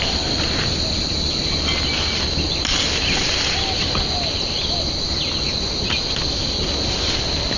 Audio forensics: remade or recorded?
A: recorded